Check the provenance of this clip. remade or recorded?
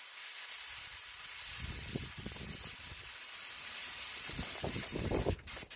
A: recorded